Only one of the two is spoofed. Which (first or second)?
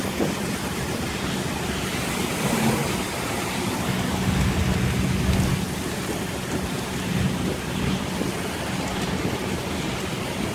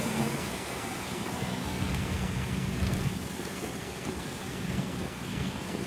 second